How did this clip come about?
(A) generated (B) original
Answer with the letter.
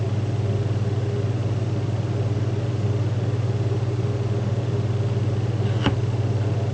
B